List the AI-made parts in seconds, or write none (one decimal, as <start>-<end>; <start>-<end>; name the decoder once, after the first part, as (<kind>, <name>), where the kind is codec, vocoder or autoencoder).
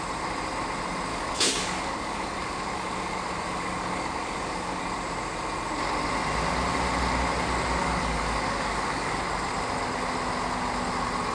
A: 1.1-4.8 (codec, DAC); 7.8-9.2